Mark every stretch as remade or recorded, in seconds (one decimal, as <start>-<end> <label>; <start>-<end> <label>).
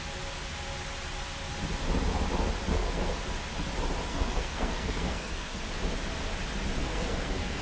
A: 0.0-2.7 recorded; 2.7-3.2 remade; 3.2-4.1 recorded; 4.1-5.7 remade; 5.7-6.8 recorded; 6.8-7.6 remade